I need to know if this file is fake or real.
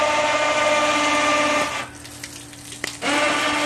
real